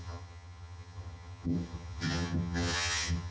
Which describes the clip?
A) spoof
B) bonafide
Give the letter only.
A